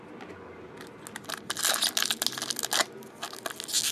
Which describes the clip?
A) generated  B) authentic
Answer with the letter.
B